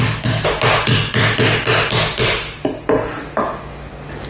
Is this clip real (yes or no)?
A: yes